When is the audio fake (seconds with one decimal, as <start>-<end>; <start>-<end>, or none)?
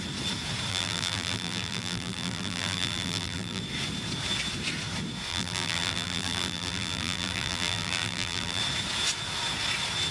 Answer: 0.7-3.6; 5.3-8.6